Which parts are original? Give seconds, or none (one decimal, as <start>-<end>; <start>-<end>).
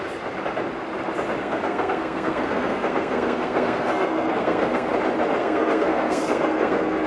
0.0-1.4; 4.9-5.4